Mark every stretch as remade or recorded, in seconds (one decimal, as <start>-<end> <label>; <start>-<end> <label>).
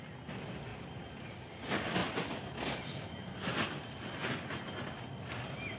0.0-5.8 recorded